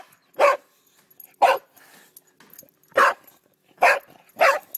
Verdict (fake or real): real